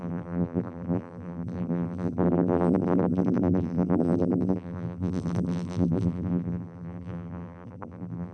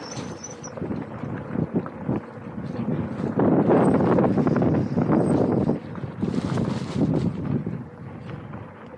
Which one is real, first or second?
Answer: second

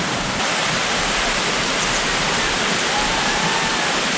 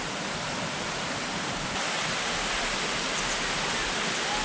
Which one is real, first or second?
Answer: second